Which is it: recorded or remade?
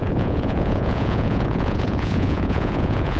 remade